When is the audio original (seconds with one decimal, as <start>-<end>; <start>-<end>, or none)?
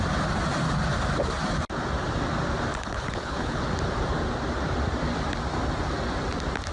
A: 0.0-2.7; 3.6-6.7